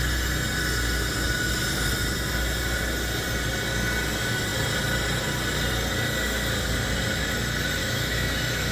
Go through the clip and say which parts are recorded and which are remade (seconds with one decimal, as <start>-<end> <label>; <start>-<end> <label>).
0.0-7.8 recorded; 7.8-8.7 remade